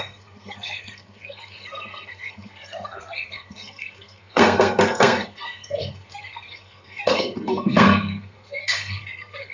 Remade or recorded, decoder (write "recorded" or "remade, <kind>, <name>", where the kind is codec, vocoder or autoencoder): remade, codec, SNAC